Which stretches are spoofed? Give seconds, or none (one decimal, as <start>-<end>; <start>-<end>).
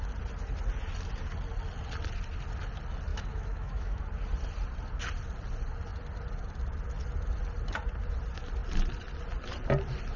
3.1-4.0